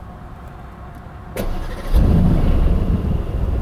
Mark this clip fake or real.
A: real